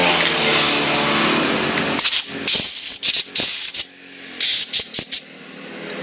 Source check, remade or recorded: recorded